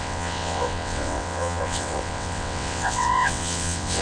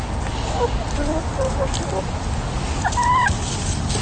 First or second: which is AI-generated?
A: first